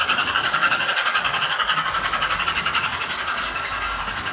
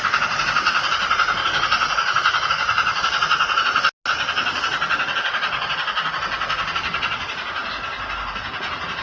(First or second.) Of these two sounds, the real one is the second